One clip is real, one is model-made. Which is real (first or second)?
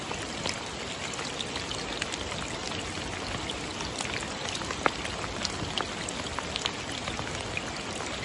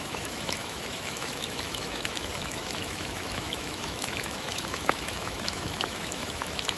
first